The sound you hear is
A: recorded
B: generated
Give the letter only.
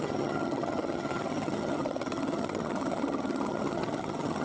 B